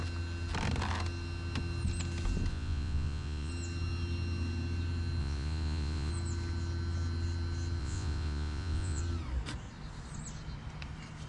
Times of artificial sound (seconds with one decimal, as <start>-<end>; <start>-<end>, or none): 2.5-3.5; 5.2-6.1; 7.8-9.0